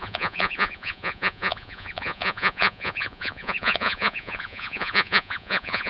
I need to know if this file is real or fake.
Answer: fake